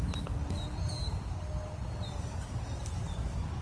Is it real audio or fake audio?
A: real